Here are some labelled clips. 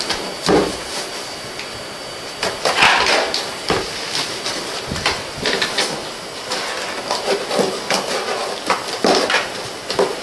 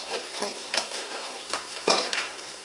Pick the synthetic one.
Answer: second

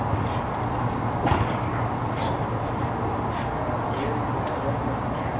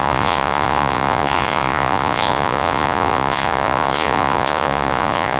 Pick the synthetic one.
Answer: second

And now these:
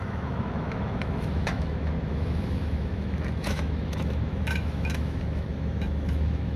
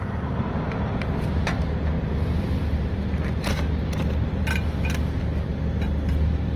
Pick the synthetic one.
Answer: first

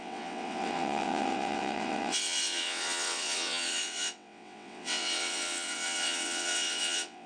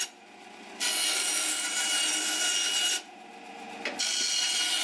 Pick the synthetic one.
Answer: first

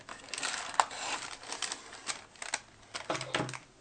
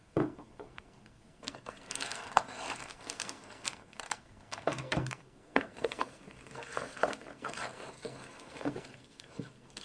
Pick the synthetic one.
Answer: second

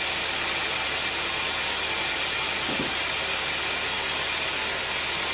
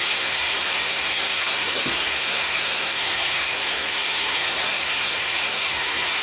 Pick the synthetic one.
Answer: second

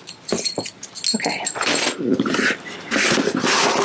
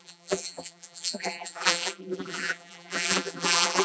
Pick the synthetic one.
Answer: second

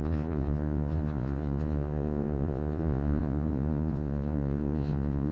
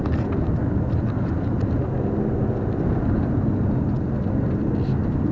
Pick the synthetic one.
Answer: first